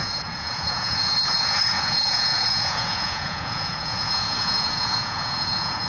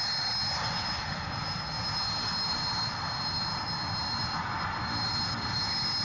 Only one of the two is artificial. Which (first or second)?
first